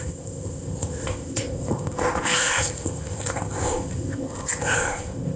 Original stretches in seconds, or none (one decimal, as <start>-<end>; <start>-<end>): none

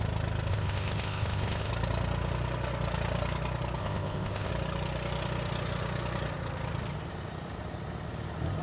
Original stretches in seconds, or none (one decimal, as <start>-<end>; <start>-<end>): 0.0-0.5; 1.7-3.8; 4.5-8.6

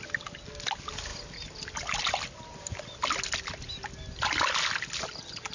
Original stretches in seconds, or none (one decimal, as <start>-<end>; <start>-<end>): 0.0-5.5

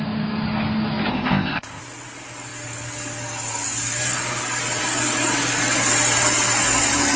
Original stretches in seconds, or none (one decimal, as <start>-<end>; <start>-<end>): 0.0-1.1; 1.8-7.2

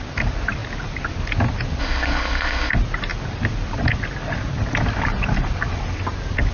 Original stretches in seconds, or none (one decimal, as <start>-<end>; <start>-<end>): 0.0-1.8; 2.7-6.5

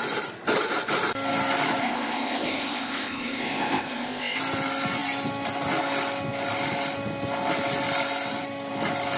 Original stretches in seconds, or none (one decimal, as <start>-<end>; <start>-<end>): 0.0-1.8; 4.4-9.2

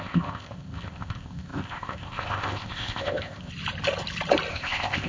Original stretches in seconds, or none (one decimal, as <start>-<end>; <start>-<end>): 3.5-4.5

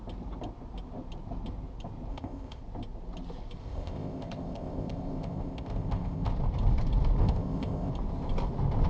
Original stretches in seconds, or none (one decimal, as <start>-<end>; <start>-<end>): 0.0-2.1; 2.6-3.6; 6.3-7.2; 7.9-8.9